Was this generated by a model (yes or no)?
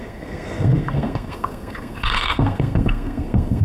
yes